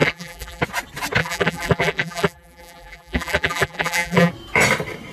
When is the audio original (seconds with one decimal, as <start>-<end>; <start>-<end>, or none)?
0.6-1.2; 4.3-5.1

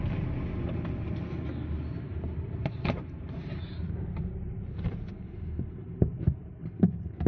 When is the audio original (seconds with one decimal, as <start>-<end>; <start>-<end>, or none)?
0.0-2.1; 6.5-7.3